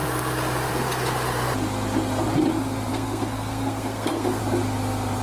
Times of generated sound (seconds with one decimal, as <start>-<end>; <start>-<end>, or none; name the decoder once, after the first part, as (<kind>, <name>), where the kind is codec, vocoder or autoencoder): 2.9-4.4 (codec, SNAC)